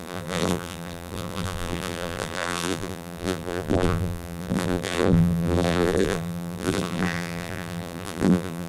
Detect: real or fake fake